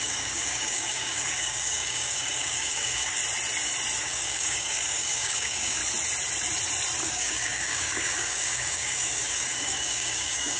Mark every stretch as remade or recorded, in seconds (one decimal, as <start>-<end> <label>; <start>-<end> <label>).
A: 0.0-3.2 remade; 3.2-4.0 recorded; 4.0-5.8 remade; 5.8-7.0 recorded; 7.0-10.6 remade